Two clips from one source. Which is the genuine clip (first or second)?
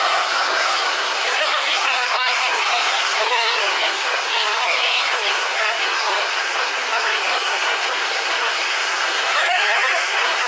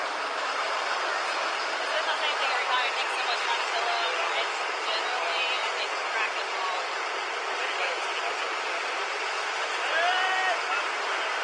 second